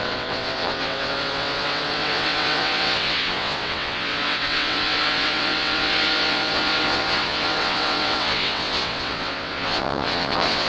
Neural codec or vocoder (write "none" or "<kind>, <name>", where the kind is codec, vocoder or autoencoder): vocoder, WaveNeXt